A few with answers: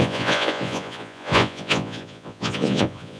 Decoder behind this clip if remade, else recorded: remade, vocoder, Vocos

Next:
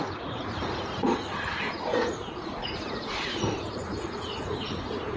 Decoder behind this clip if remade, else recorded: remade, vocoder, Vocos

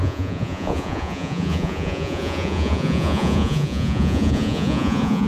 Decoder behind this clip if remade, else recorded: remade, vocoder, Vocos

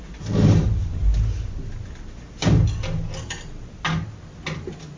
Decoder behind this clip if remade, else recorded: recorded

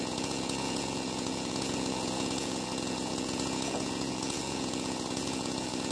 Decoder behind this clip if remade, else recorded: remade, vocoder, Vocos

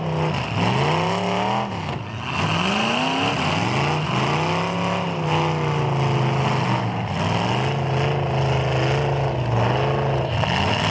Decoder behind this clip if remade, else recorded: recorded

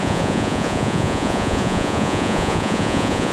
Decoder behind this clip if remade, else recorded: remade, vocoder, Vocos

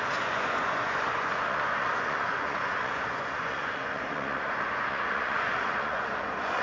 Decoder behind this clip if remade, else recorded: remade, vocoder, Vocos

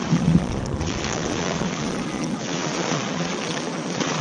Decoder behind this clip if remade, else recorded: remade, vocoder, Vocos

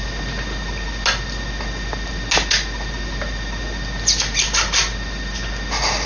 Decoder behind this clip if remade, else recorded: recorded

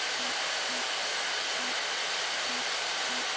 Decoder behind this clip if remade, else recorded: recorded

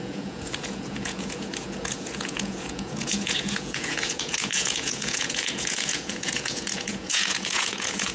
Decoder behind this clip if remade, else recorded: remade, vocoder, Vocos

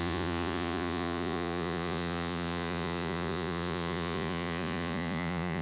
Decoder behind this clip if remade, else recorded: remade, vocoder, Vocos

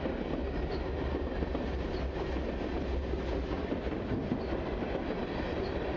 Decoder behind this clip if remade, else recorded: recorded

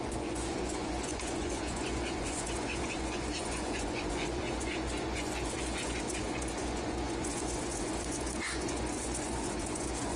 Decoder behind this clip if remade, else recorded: remade, vocoder, Vocos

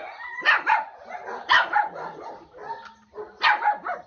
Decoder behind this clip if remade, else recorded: recorded